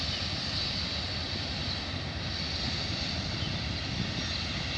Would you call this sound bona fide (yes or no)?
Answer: yes